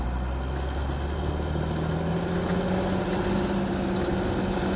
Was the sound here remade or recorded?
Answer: recorded